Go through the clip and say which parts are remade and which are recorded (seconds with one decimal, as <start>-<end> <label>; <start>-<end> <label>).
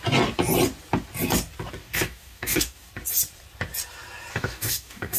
0.0-1.8 recorded; 1.8-2.9 remade; 2.9-4.3 recorded; 4.3-5.2 remade